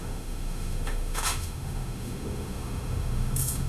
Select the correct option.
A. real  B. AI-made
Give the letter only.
B